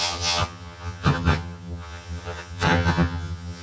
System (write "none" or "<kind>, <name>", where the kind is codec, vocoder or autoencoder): vocoder, HiFi-GAN